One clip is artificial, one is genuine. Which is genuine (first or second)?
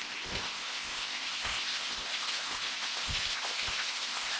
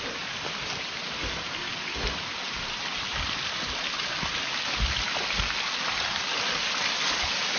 second